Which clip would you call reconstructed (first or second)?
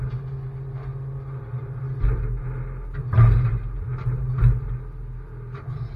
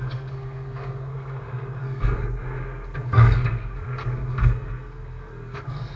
second